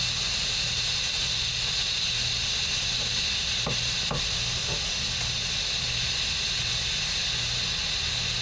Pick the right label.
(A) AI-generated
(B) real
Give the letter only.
B